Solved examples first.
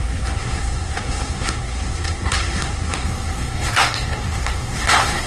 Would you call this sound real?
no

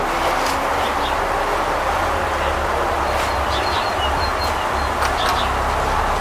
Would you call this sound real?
yes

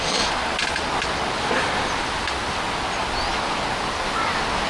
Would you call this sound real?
yes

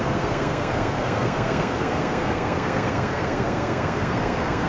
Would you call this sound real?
no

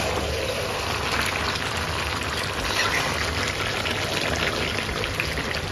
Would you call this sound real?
yes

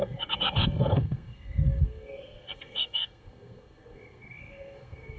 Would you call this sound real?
no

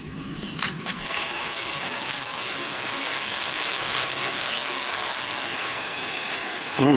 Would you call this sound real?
no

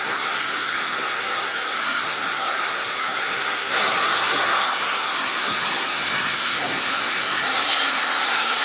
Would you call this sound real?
no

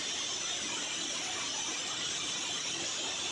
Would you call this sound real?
yes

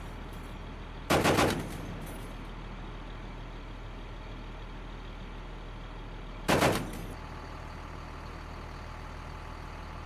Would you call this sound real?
yes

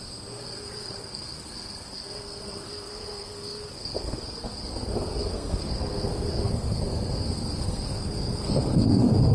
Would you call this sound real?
no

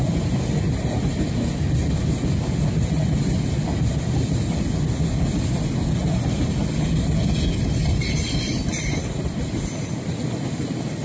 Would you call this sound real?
yes